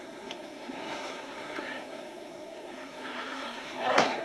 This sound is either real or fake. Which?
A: fake